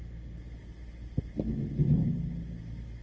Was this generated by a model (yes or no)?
no